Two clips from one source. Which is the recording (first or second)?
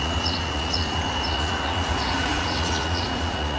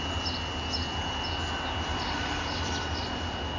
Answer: second